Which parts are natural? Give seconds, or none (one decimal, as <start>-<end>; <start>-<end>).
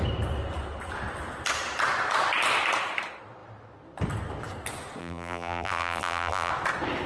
0.0-5.0; 6.5-7.1